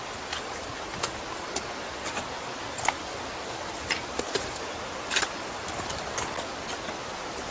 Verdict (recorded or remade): recorded